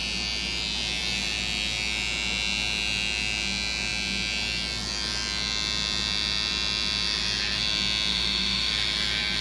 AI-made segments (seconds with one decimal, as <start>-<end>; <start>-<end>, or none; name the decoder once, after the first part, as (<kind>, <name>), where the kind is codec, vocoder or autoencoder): 8.1-8.7 (autoencoder, DAC-VAE)